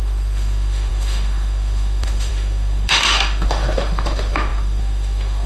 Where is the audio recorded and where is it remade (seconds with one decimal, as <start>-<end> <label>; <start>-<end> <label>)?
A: 0.0-5.5 remade